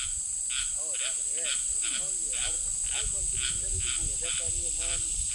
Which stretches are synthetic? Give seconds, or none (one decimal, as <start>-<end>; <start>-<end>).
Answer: 4.3-5.3